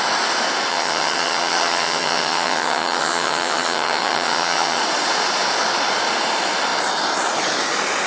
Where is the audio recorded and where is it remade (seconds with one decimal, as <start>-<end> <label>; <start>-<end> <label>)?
0.0-0.7 recorded; 0.7-4.8 remade; 4.8-8.1 recorded